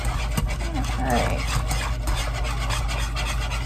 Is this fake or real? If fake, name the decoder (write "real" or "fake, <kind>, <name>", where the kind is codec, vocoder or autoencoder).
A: real